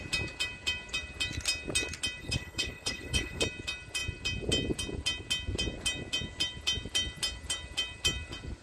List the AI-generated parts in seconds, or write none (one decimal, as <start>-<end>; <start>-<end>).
2.2-3.4

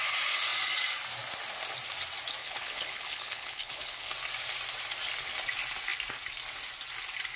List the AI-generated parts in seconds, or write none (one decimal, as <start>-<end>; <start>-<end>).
2.4-4.1

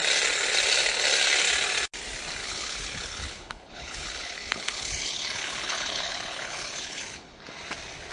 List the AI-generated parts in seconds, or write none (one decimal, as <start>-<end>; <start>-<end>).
2.4-7.3